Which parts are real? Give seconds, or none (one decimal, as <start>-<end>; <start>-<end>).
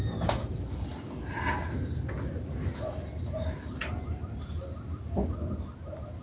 0.0-6.2